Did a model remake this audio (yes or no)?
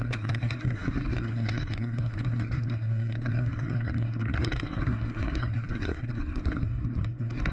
yes